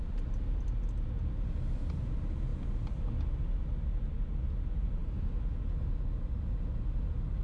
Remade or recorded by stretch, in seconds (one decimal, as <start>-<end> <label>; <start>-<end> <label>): 0.0-7.4 recorded